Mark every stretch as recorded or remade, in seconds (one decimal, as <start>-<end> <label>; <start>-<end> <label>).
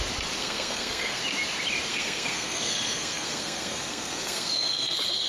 0.0-0.4 recorded; 0.4-1.2 remade; 1.2-1.9 recorded; 1.9-5.3 remade